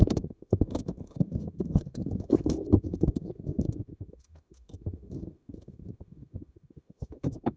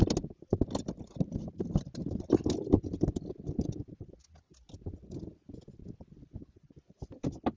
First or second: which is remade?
first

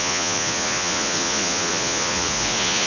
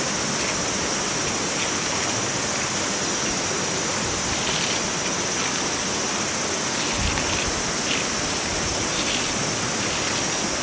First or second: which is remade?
first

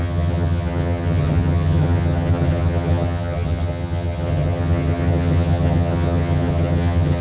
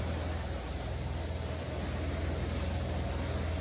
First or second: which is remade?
first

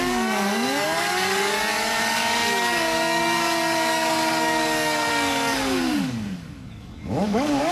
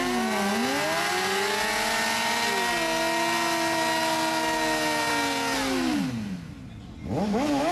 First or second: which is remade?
first